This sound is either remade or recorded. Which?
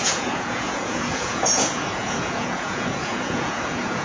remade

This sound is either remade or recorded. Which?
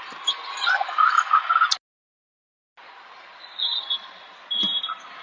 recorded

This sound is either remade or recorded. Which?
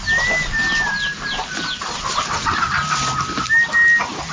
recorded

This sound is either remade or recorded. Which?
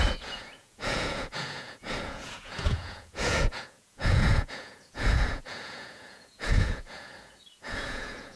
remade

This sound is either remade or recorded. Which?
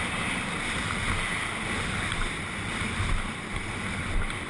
recorded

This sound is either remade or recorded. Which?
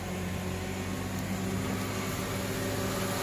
recorded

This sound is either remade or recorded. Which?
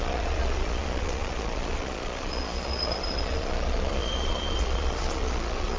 remade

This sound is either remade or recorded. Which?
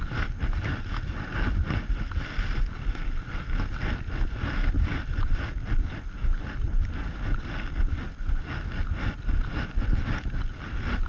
recorded